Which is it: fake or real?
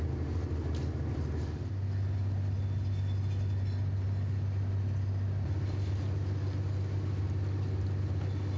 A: real